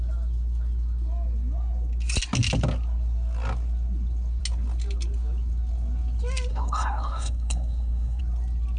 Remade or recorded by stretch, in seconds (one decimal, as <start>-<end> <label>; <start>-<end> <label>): 0.0-6.5 recorded; 6.5-8.2 remade; 8.2-8.8 recorded